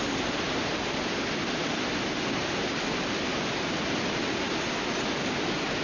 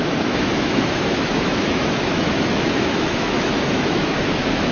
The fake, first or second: second